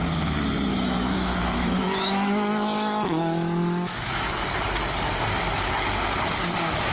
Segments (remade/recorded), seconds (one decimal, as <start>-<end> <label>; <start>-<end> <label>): 0.0-0.7 recorded; 0.7-4.3 remade; 4.3-6.9 recorded